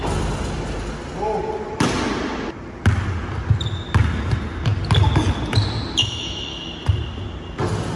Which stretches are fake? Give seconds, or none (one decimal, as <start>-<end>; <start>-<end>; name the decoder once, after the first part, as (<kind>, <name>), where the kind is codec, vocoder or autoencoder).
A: 6.0-6.7 (autoencoder, DAC-VAE)